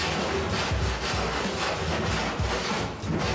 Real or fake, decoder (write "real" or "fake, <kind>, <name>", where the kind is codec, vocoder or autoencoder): real